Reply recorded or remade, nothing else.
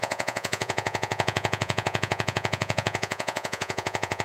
remade